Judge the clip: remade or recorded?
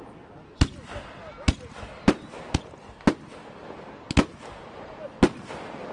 recorded